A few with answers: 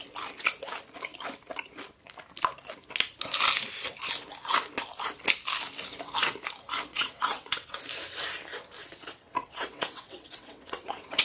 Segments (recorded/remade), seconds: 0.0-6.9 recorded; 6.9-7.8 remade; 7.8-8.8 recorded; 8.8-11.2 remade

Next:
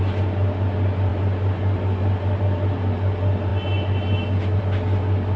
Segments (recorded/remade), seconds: 0.0-5.4 recorded

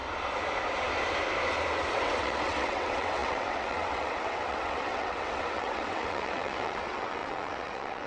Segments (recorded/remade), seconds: 0.0-1.9 recorded; 1.9-8.1 remade

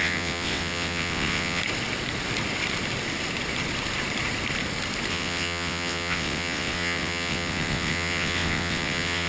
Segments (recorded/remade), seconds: 0.0-1.6 remade; 1.6-5.1 recorded; 5.1-9.3 remade

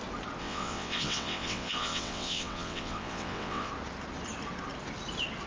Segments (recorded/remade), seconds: 0.0-0.4 recorded; 0.4-3.7 remade; 3.7-5.5 recorded

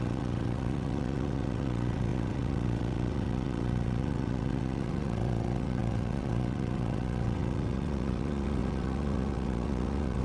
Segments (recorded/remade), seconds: 0.0-10.2 remade

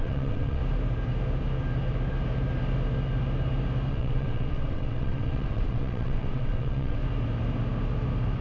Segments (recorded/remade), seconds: 0.0-0.6 remade; 0.6-3.9 recorded; 3.9-7.0 remade; 7.0-8.4 recorded

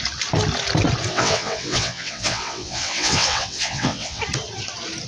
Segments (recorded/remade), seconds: 0.0-1.1 recorded; 1.1-4.2 remade; 4.2-5.1 recorded